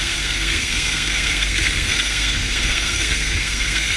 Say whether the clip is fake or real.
fake